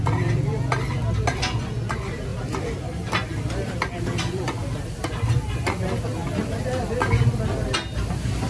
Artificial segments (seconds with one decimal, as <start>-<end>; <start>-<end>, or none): 2.3-5.0